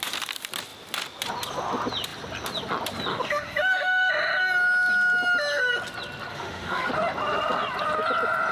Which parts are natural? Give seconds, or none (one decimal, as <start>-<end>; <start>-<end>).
0.0-3.1; 4.1-6.3; 6.9-8.5